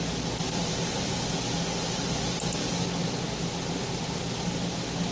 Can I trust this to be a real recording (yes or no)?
yes